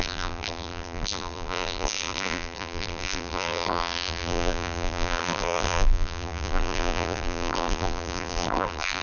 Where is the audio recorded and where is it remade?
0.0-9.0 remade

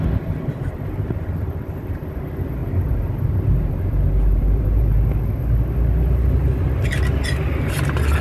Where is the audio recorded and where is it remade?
0.0-2.6 recorded; 2.6-4.8 remade; 4.8-8.2 recorded

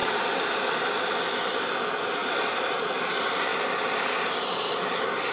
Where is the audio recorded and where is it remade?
0.0-1.6 remade; 1.6-5.3 recorded

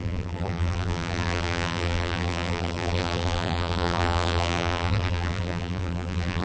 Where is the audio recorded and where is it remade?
0.0-6.4 remade

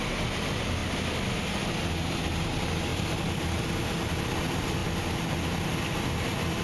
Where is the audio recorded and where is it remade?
0.0-2.9 recorded; 2.9-4.1 remade; 4.1-6.6 recorded

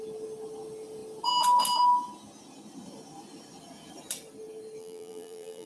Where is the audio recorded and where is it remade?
0.0-4.8 recorded; 4.8-5.7 remade

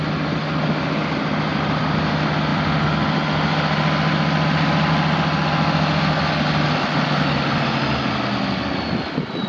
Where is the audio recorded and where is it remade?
0.0-1.5 recorded; 1.5-2.1 remade; 2.1-9.5 recorded